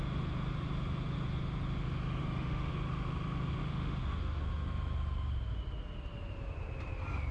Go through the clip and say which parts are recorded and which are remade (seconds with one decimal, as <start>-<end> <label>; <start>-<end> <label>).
0.0-2.2 recorded; 2.2-2.7 remade; 2.7-3.6 recorded; 3.6-4.4 remade; 4.4-7.3 recorded